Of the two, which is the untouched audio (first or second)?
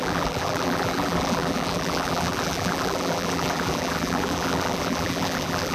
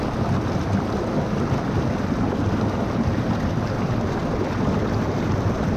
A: second